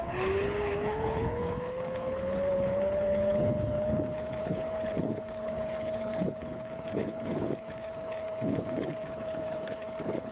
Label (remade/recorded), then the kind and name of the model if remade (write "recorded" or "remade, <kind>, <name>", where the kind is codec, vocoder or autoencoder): remade, codec, HILCodec